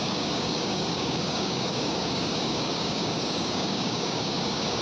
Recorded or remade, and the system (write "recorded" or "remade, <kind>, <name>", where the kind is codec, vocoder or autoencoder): remade, codec, DAC